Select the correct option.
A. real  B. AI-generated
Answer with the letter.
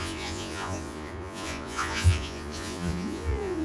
B